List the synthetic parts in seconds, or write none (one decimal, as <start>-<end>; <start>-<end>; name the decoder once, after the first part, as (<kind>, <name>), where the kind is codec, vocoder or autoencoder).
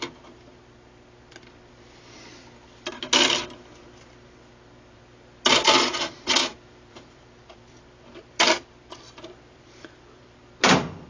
6.4-10.4 (vocoder, BigVGAN v2)